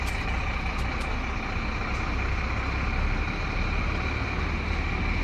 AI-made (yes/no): no